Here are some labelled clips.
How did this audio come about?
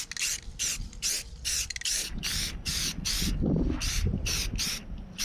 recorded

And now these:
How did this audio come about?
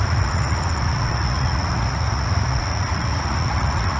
remade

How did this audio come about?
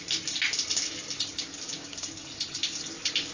recorded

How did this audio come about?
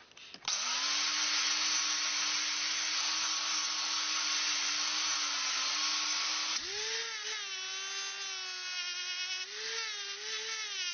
recorded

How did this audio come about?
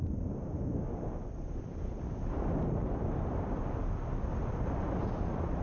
recorded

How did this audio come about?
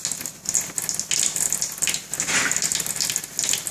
recorded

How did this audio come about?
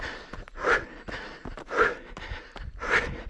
recorded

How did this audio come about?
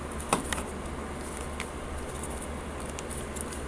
recorded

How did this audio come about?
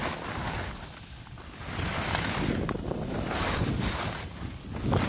recorded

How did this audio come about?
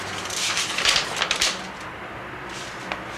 recorded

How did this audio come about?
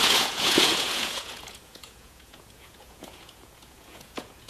remade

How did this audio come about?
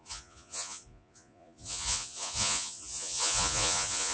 remade